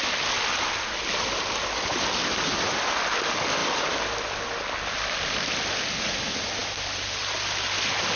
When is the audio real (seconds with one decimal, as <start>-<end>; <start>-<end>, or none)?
0.0-8.2